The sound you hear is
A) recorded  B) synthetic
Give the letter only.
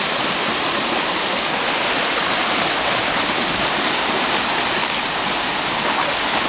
A